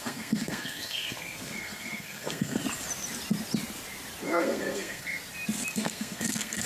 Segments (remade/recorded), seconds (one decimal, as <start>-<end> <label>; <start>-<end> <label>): 0.0-2.6 remade; 2.6-4.2 recorded; 4.2-5.2 remade; 5.2-5.7 recorded; 5.7-6.7 remade